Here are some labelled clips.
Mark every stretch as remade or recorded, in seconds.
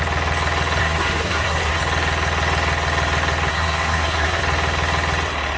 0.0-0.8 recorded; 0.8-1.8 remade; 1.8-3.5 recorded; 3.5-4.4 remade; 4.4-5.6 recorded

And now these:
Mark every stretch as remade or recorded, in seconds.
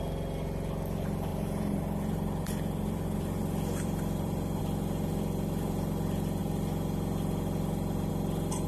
0.0-1.3 recorded; 1.3-4.6 remade; 4.6-8.7 recorded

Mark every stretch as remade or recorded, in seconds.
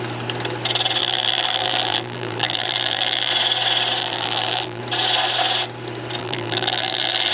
0.0-1.0 recorded; 1.0-3.3 remade; 3.3-4.0 recorded; 4.0-4.8 remade; 4.8-6.2 recorded; 6.2-7.3 remade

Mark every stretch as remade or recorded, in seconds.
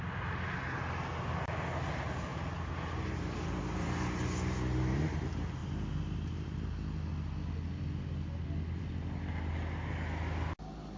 0.0-11.0 recorded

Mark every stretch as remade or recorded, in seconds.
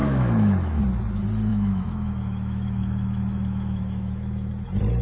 0.0-0.8 remade; 0.8-1.5 recorded; 1.5-4.5 remade; 4.5-5.0 recorded